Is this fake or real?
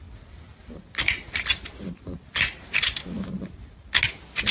real